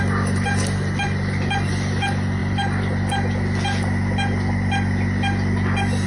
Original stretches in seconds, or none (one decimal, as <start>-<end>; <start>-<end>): 0.0-6.1